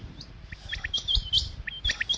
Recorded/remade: recorded